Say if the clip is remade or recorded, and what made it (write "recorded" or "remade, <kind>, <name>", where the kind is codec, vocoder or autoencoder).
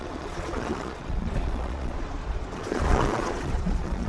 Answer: remade, vocoder, Vocos